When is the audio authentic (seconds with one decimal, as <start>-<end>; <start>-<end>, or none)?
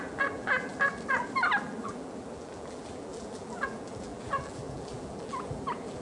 0.7-1.6